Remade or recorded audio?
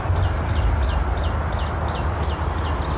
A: recorded